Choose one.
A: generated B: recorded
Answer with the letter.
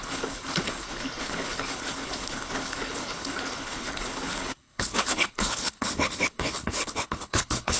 A